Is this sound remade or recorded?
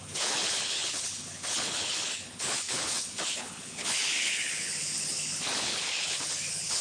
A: remade